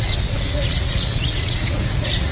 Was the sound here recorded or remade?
remade